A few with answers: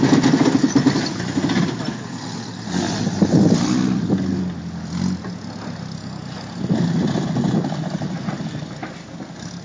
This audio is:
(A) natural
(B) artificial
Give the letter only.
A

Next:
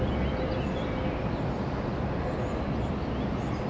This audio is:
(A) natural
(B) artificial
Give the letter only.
A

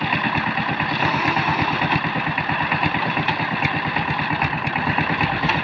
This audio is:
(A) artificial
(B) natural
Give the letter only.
B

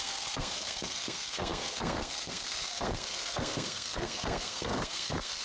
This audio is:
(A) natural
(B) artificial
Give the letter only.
B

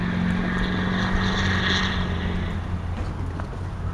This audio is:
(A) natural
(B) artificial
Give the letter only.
A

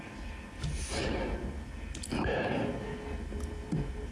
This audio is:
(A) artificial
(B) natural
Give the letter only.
B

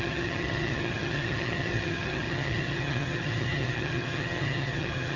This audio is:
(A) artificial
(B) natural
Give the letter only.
A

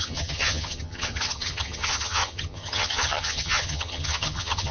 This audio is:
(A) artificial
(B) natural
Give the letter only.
A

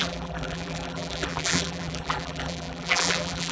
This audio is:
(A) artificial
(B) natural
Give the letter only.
A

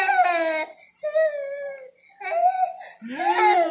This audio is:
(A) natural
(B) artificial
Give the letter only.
A